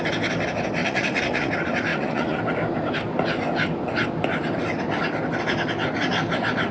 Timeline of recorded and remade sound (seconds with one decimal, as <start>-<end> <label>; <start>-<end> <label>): 0.0-0.8 recorded; 0.8-1.5 remade; 1.5-1.9 recorded; 1.9-2.4 remade; 2.4-6.7 recorded